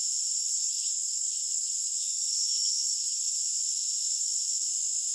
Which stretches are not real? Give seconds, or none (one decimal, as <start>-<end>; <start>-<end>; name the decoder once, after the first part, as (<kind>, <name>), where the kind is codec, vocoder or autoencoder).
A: 0.4-3.4 (codec, HILCodec)